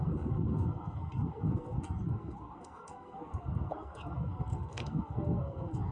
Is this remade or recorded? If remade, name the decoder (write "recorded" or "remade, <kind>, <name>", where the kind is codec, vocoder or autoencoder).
remade, codec, SNAC